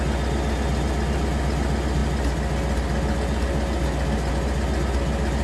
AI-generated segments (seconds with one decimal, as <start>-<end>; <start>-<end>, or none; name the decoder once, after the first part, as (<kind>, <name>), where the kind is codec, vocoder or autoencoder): none